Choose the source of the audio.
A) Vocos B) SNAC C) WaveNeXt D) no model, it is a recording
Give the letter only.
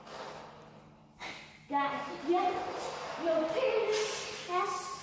D